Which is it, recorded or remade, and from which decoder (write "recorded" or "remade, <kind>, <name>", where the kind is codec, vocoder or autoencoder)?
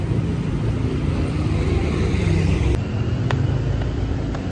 remade, vocoder, BigVGAN v2